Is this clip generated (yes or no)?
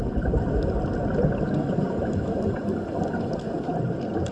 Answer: no